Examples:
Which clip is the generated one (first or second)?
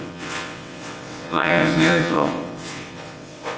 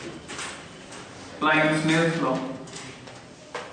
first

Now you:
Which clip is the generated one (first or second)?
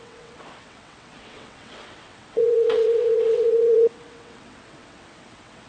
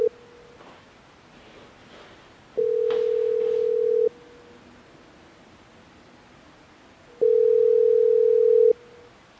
first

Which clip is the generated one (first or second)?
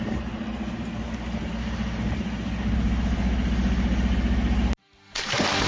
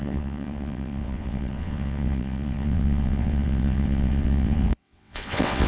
second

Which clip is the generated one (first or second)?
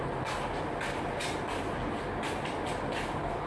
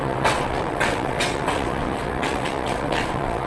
second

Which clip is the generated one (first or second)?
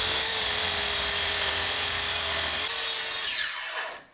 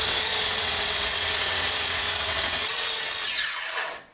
second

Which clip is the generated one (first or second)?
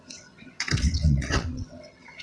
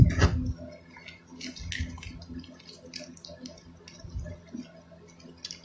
first